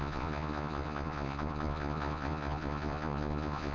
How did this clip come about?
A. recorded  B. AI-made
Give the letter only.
B